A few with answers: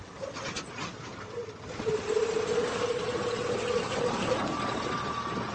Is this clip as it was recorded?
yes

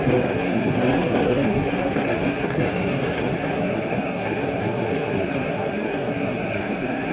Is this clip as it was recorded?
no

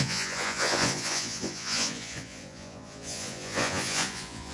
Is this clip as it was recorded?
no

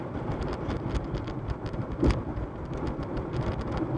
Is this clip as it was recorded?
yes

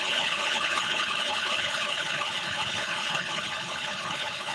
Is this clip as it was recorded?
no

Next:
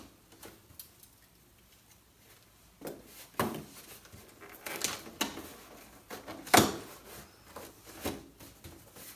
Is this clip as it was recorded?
yes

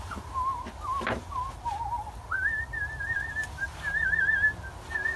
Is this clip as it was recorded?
yes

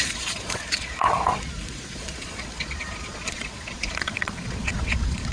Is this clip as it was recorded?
no